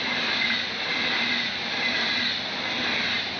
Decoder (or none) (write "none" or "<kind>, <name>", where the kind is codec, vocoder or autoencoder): none